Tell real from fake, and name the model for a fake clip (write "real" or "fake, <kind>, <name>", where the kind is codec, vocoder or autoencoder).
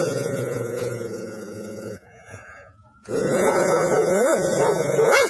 fake, vocoder, Vocos